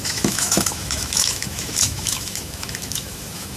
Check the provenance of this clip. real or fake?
fake